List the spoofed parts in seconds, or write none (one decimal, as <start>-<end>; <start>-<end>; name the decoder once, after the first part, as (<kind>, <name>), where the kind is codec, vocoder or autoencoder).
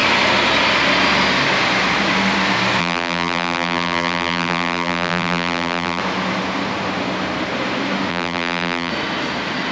2.8-6.0 (vocoder, BigVGAN v2); 8.1-8.9